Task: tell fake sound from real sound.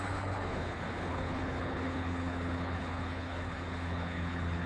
fake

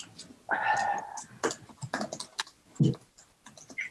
real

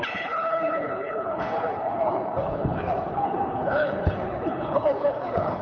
fake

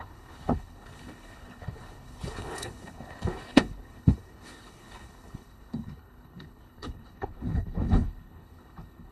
fake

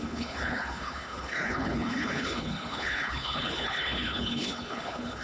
fake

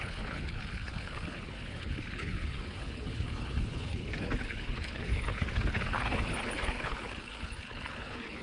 fake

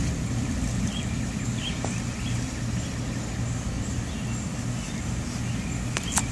real